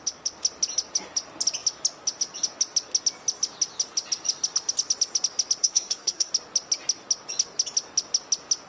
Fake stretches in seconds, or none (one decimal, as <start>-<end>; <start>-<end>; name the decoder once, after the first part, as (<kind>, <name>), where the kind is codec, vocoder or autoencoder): 5.6-6.3 (codec, SNAC)